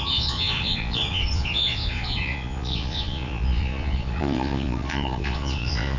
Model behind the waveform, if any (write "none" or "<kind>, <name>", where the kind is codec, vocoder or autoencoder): vocoder, Vocos